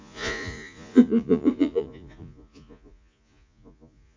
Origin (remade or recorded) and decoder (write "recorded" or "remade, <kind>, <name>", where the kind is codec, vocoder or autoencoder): remade, vocoder, Vocos